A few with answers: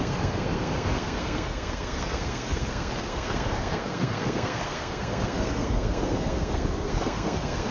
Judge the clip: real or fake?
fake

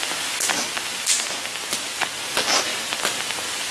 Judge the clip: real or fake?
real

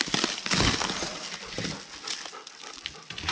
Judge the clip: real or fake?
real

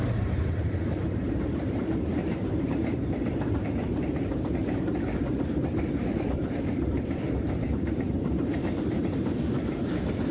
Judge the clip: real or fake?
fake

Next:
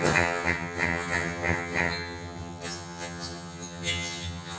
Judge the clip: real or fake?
fake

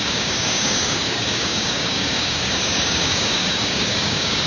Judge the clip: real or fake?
fake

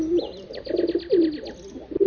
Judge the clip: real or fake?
real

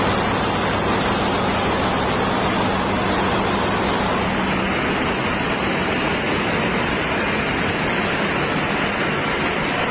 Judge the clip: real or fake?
real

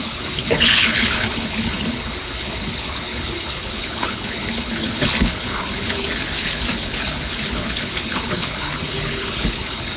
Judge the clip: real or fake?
fake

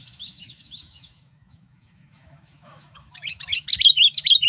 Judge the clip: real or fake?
fake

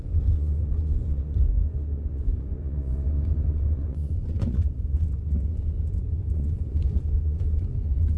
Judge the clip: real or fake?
fake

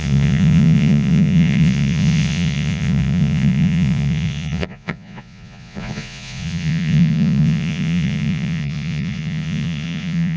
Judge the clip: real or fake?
fake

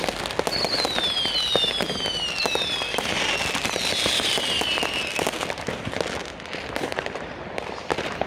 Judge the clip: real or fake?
real